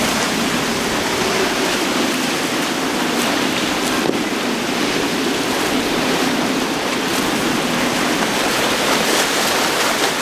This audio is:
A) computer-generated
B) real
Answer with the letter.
A